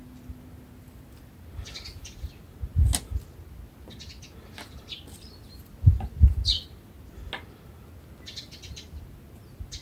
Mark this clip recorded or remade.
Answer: recorded